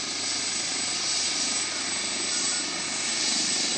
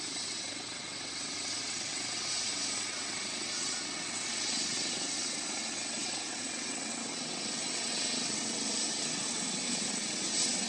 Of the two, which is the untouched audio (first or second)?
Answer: first